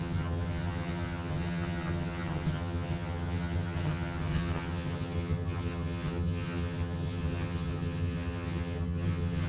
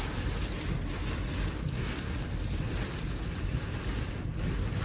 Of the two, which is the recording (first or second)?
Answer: second